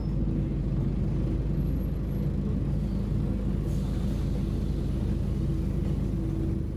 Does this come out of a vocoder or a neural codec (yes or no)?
no